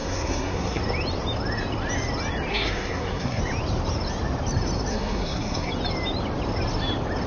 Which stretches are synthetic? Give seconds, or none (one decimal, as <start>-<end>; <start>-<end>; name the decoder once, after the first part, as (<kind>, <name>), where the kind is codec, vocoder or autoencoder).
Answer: 0.0-0.8 (codec, SNAC); 2.5-3.4; 4.9-5.7